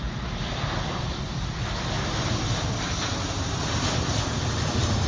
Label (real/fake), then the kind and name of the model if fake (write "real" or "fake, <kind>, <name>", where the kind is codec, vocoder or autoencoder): real